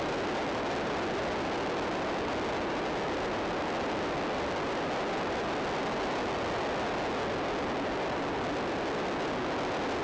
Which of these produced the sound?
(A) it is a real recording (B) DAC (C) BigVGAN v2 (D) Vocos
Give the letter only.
A